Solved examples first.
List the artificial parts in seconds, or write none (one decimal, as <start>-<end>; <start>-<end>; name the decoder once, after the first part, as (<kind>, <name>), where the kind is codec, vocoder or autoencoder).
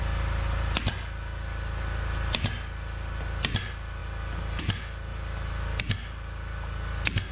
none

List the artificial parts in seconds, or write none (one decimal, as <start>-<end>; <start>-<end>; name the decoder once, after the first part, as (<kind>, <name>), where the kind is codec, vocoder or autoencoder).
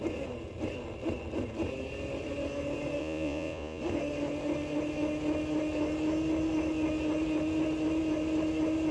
3.0-3.8 (vocoder, Vocos)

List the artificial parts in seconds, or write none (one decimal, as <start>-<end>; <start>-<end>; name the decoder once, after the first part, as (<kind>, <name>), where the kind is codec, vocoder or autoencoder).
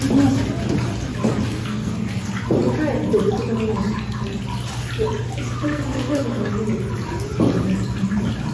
1.5-2.3 (codec, SNAC); 5.7-6.5